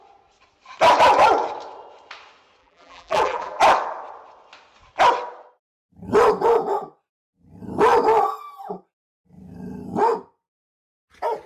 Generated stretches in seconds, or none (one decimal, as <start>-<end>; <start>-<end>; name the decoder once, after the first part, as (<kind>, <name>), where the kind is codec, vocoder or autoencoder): 2.6-3.6 (vocoder, BigVGAN v2)

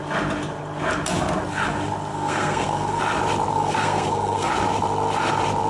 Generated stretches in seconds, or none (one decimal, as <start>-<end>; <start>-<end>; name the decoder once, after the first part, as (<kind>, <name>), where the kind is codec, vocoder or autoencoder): 2.1-3.0 (codec, SNAC); 3.5-4.5

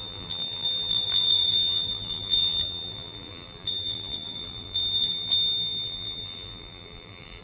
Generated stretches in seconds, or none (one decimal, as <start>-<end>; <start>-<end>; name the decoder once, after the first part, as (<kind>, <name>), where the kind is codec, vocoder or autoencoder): 0.0-7.4 (vocoder, BigVGAN v2)

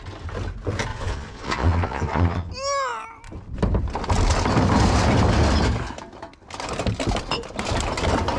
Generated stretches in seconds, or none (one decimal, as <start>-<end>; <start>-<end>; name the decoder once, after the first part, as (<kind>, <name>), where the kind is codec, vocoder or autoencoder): 0.9-2.5 (vocoder, Vocos)

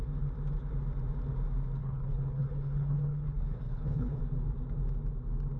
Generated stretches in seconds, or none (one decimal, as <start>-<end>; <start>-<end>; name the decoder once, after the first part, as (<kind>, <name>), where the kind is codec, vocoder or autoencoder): 1.8-4.2 (codec, HILCodec)

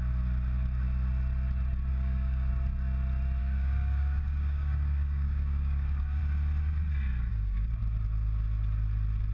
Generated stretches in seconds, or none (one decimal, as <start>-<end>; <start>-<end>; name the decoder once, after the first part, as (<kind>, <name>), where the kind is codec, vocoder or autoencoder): 1.9-2.5 (codec, DAC); 3.4-6.2; 7.3-7.8